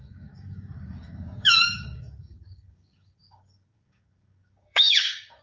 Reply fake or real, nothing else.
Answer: fake